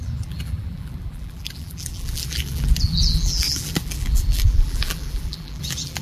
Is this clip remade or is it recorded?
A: remade